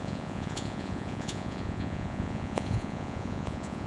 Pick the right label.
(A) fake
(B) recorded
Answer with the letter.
A